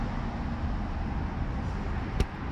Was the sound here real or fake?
real